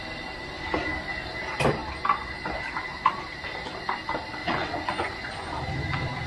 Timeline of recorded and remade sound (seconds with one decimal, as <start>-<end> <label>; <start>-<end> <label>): 0.0-4.4 recorded; 4.4-5.5 remade; 5.5-6.3 recorded